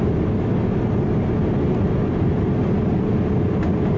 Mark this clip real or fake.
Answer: real